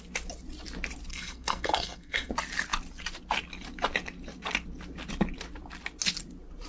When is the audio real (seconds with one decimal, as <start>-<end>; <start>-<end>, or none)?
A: 0.0-1.1; 2.3-6.7

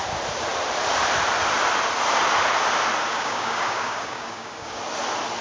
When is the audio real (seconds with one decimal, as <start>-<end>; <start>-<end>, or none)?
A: 0.0-3.1; 4.8-5.4

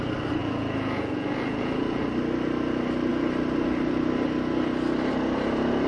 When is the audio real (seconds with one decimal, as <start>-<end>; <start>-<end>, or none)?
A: 0.0-0.4; 2.0-5.9

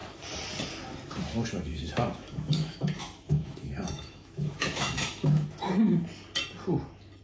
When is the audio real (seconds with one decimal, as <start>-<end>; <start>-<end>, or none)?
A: 0.0-1.7; 5.7-7.2

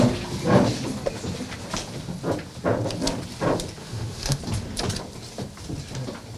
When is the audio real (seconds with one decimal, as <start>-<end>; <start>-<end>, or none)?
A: 0.0-3.8; 4.4-6.4